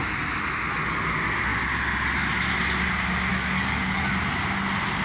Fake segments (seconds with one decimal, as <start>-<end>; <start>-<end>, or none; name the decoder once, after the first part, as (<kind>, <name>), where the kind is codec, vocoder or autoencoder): 3.3-4.1 (codec, DAC)